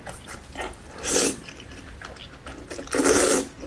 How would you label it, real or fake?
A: real